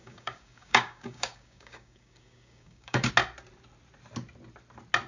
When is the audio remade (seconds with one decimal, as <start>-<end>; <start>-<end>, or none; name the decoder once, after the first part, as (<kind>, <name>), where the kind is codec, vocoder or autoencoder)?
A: 0.0-3.1 (codec, DAC)